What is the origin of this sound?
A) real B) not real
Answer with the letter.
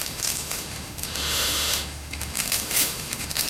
B